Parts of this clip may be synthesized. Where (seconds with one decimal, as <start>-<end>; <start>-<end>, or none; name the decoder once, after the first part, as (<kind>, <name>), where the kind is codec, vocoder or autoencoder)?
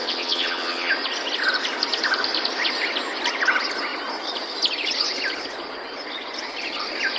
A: 0.0-0.9 (vocoder, Vocos)